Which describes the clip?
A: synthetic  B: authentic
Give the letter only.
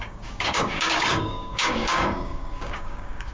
A